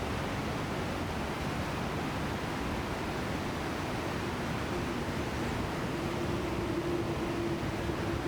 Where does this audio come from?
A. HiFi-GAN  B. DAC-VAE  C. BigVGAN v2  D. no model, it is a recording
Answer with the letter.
D